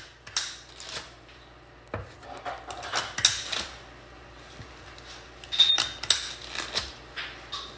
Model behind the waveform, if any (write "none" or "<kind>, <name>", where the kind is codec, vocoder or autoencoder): none